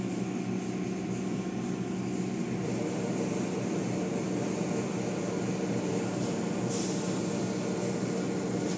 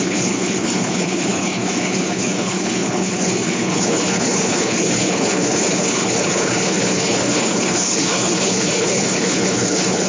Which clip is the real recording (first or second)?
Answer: first